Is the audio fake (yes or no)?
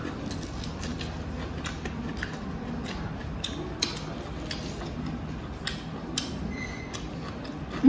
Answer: no